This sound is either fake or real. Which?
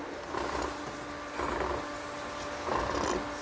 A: real